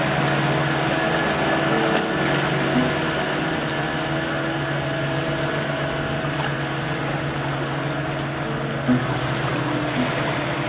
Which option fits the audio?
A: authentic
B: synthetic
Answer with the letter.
A